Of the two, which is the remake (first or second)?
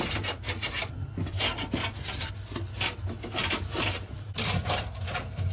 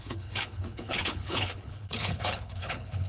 second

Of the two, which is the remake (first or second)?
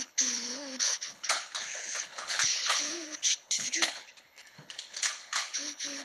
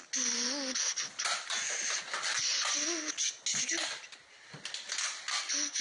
first